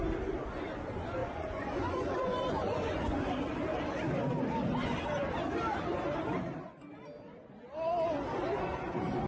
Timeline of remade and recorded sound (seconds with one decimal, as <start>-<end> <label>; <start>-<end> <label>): 0.0-1.2 recorded; 1.2-3.3 remade; 3.3-9.3 recorded